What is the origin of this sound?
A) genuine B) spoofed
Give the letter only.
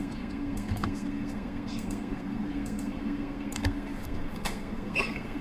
B